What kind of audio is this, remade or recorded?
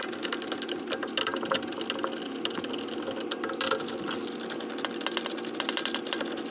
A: recorded